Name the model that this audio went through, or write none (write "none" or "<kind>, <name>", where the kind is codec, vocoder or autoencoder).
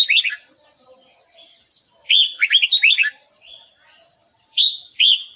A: vocoder, BigVGAN v2